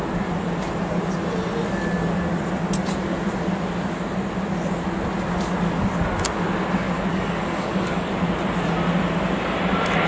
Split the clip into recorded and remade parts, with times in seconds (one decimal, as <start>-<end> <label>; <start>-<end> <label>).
0.0-7.1 recorded; 7.1-8.1 remade; 8.1-10.1 recorded